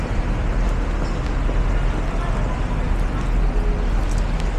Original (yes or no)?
yes